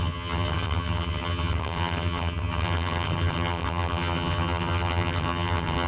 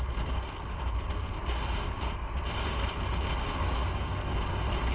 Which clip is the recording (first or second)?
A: second